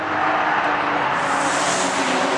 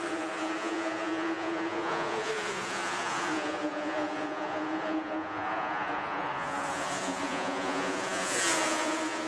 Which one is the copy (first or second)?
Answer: second